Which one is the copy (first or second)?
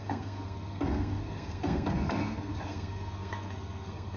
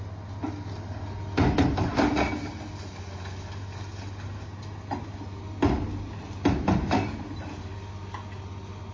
first